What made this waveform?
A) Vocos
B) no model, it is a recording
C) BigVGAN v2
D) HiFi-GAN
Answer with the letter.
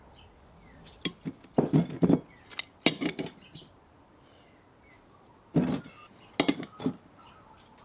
B